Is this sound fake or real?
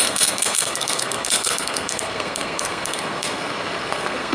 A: fake